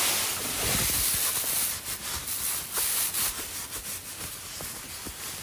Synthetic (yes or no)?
no